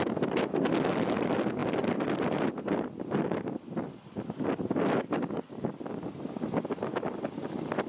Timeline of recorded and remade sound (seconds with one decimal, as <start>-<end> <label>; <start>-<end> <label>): 0.0-7.9 recorded